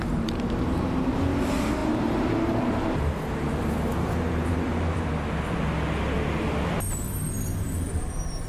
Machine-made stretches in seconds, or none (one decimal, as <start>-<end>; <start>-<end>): 0.0-4.7; 7.5-8.5